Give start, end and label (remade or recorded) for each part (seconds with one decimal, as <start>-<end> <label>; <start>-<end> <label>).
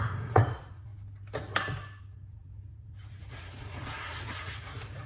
0.0-0.9 remade; 0.9-2.0 recorded; 2.0-5.1 remade